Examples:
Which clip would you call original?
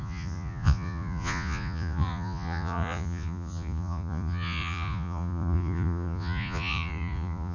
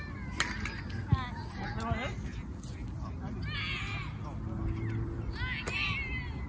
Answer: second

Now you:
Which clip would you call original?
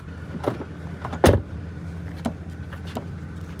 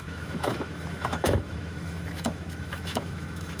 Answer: first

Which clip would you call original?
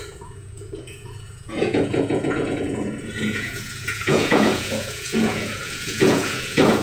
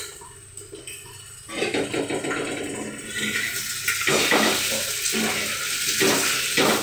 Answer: second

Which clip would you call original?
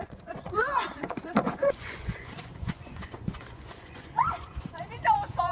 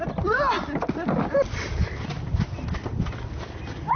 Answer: second